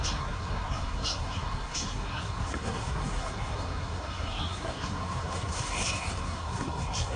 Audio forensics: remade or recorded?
remade